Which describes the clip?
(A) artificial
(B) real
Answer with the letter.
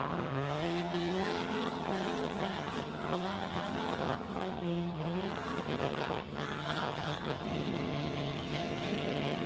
A